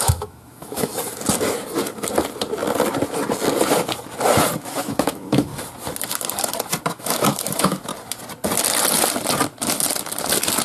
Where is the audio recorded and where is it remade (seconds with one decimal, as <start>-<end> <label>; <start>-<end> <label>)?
0.0-0.9 remade; 0.9-4.6 recorded; 4.6-5.5 remade; 5.5-6.8 recorded; 6.8-7.9 remade; 7.9-10.6 recorded